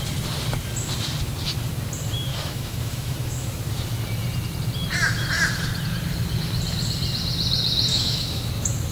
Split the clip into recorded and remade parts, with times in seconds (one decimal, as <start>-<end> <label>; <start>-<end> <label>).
0.0-2.3 recorded; 2.3-3.7 remade; 3.7-7.9 recorded; 7.9-8.5 remade; 8.5-8.9 recorded